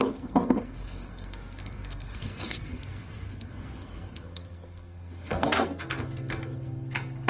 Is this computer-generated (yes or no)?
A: yes